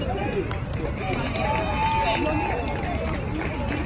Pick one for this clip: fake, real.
real